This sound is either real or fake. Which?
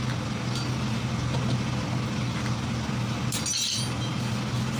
real